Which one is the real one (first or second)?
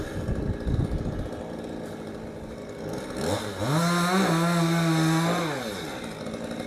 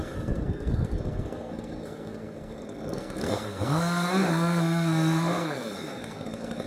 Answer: first